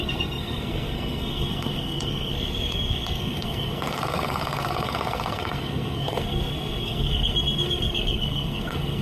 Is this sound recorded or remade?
remade